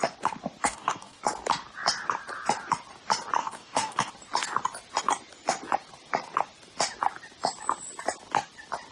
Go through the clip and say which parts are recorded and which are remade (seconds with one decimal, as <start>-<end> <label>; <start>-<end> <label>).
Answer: 0.0-0.6 recorded; 0.6-1.2 remade; 1.2-3.4 recorded; 3.4-4.1 remade; 4.1-8.9 recorded